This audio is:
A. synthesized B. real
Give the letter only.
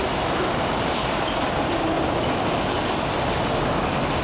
B